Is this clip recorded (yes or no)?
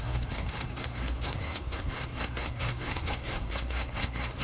no